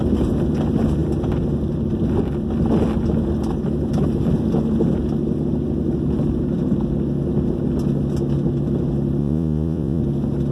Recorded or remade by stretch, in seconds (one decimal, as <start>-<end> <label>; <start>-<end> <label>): 0.0-9.2 recorded; 9.2-10.0 remade; 10.0-10.5 recorded